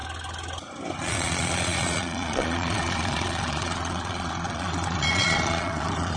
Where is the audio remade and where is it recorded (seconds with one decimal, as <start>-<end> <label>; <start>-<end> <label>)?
0.0-1.0 recorded; 1.0-6.2 remade